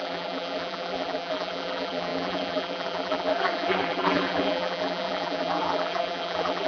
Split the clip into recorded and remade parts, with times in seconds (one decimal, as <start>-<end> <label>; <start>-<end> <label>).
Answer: 0.0-6.7 remade